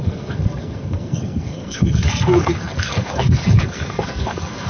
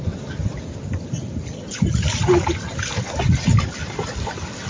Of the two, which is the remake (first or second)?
first